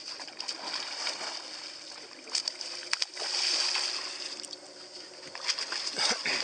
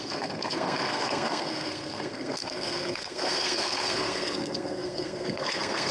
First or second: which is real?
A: first